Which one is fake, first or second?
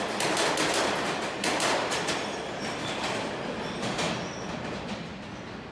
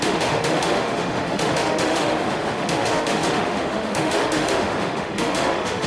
second